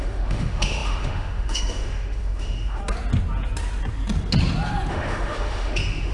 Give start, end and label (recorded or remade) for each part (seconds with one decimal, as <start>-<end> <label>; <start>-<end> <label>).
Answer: 0.0-2.8 remade; 2.8-4.9 recorded; 4.9-6.1 remade